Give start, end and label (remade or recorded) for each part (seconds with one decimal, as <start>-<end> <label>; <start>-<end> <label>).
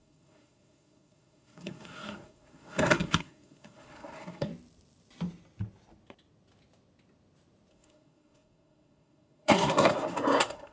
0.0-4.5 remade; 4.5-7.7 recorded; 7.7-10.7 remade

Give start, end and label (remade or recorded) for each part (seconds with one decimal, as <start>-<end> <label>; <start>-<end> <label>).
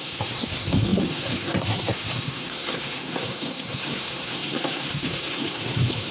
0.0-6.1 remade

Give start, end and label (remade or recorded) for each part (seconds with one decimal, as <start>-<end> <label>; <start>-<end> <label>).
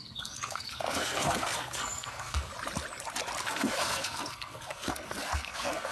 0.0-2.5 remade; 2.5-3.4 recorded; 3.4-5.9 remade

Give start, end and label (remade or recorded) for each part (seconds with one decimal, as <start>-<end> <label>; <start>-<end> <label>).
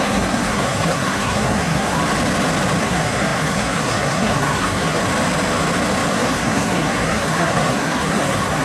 0.0-2.0 remade; 2.0-2.8 recorded; 2.8-5.0 remade; 5.0-6.1 recorded; 6.1-8.6 remade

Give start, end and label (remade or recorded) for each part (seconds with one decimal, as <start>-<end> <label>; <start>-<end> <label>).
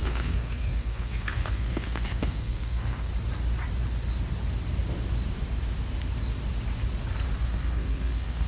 0.0-3.1 remade; 3.1-7.4 recorded; 7.4-8.5 remade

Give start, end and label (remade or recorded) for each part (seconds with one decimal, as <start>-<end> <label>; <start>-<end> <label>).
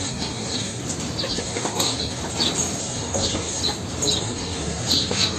0.0-0.8 remade; 0.8-1.3 recorded; 1.3-2.2 remade; 2.2-2.8 recorded; 2.8-3.6 remade; 3.6-4.2 recorded; 4.2-5.4 remade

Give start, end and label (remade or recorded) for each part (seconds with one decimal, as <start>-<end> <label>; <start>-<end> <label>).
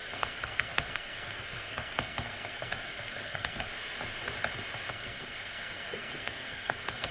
0.0-3.7 remade; 3.7-4.9 recorded; 4.9-7.1 remade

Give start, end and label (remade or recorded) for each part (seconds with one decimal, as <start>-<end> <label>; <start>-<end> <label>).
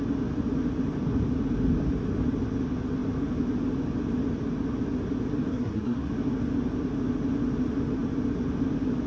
0.0-5.5 recorded; 5.5-6.1 remade; 6.1-9.1 recorded